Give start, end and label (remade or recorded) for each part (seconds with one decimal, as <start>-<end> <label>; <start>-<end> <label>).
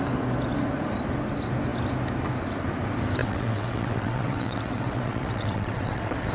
0.0-3.2 recorded; 3.2-6.3 remade